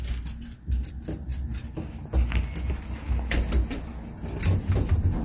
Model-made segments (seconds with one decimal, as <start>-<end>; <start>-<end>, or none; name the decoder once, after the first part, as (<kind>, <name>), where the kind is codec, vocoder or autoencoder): none

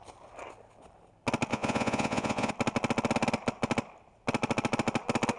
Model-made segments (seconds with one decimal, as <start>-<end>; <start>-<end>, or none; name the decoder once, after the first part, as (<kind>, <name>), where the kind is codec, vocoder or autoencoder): 1.5-2.5 (vocoder, Vocos)

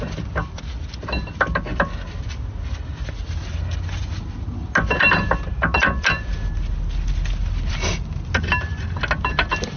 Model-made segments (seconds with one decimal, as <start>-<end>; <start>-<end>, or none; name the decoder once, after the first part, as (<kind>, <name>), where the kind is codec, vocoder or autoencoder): none

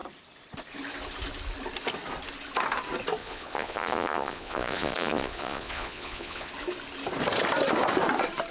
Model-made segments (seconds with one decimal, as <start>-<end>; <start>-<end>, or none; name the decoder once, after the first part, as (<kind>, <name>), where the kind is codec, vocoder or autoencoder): 3.2-6.5 (vocoder, Vocos)

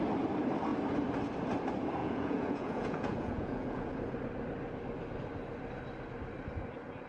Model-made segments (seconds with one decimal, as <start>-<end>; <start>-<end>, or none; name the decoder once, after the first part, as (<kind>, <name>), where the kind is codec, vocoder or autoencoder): 2.0-3.9 (vocoder, Vocos)

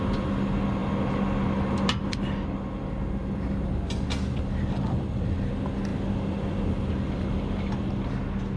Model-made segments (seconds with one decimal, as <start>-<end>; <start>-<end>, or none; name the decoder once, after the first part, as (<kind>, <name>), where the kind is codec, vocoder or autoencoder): none

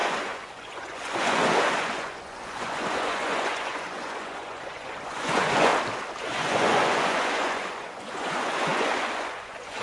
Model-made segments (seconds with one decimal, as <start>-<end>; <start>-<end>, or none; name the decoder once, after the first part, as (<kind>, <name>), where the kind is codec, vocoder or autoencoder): 0.0-5.7 (vocoder, Vocos); 6.2-9.8